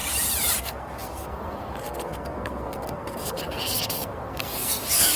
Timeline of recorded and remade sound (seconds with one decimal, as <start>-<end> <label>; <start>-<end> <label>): 0.0-0.6 recorded; 0.6-5.2 remade